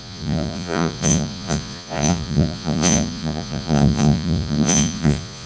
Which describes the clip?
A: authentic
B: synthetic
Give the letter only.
B